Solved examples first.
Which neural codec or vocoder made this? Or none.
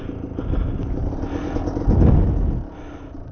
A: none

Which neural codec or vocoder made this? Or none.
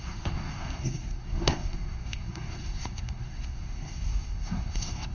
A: codec, SNAC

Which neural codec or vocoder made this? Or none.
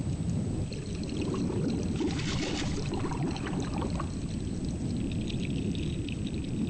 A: none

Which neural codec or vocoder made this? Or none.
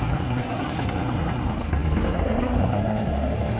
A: codec, SNAC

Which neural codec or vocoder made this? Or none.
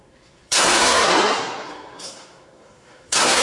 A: codec, SNAC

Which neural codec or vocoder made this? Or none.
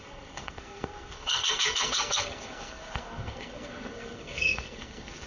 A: codec, SNAC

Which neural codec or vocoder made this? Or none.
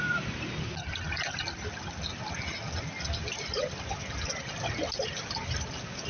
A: none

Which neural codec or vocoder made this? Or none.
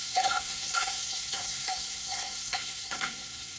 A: codec, SNAC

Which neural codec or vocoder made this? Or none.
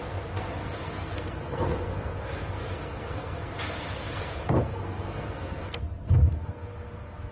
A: codec, SNAC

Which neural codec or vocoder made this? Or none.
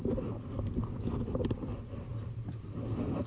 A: none